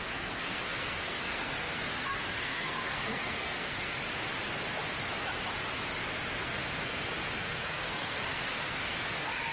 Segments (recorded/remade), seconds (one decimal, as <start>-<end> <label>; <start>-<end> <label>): 0.0-4.0 remade; 4.0-6.4 recorded; 6.4-9.5 remade